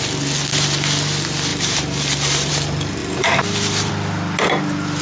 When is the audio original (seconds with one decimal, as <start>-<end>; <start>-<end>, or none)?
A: 0.0-1.5; 2.5-3.0; 3.9-5.0